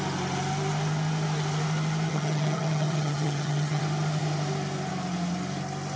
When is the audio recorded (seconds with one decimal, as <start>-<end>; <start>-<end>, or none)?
0.0-2.1; 3.8-6.0